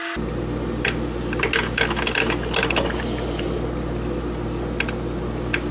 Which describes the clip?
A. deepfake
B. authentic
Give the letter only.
B